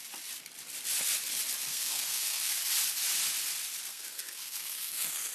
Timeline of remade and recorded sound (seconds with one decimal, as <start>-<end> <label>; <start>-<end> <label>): 0.0-1.7 recorded; 1.7-2.5 remade; 2.5-3.9 recorded; 3.9-5.3 remade